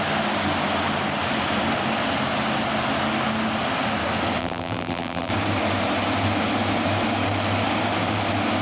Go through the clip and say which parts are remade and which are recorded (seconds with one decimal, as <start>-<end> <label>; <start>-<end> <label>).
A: 0.0-4.4 recorded; 4.4-5.3 remade; 5.3-8.6 recorded